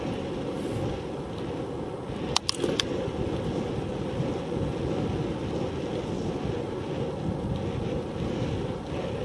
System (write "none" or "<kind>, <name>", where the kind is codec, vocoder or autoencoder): none